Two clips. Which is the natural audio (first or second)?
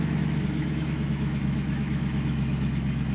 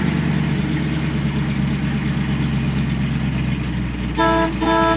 second